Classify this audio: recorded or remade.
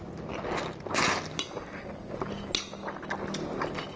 recorded